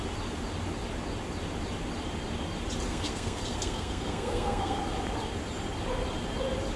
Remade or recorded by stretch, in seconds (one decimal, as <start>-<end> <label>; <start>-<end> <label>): 0.0-2.9 recorded; 2.9-4.8 remade; 4.8-6.8 recorded